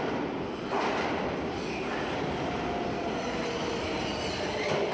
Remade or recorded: recorded